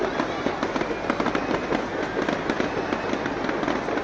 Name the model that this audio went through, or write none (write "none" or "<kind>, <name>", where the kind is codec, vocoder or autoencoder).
none